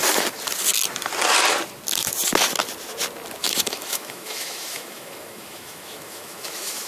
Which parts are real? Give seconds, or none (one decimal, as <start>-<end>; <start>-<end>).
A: 0.0-3.4

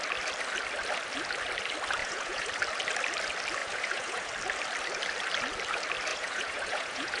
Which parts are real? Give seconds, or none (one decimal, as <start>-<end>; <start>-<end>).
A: 0.0-2.0; 2.5-3.6; 4.3-6.1

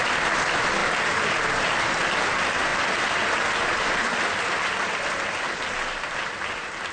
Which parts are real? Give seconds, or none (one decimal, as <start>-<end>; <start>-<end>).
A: 0.8-1.4

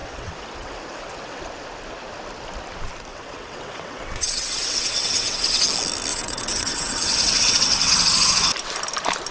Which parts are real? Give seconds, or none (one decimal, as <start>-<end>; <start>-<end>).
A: 1.4-3.1; 5.6-6.1; 7.9-9.3

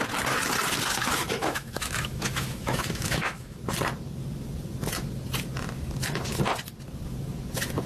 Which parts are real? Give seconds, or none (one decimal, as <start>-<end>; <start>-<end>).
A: 0.0-1.4; 3.6-7.9

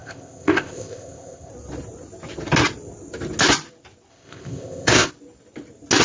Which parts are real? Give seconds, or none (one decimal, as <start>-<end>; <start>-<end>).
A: 1.5-4.1; 5.1-6.0

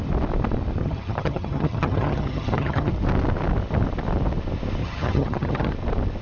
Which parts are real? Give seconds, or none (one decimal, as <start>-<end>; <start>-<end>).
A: 0.0-0.8; 2.9-4.8; 5.7-6.2